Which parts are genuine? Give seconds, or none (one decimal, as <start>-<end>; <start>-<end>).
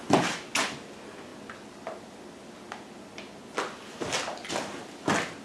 0.0-5.4